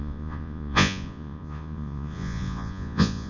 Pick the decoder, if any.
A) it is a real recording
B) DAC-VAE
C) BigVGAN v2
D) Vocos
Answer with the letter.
D